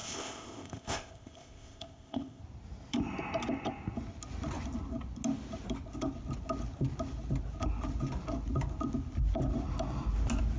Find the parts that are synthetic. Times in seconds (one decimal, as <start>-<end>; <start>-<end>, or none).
0.0-2.4